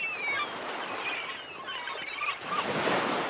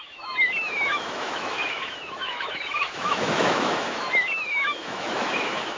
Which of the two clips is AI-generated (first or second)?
second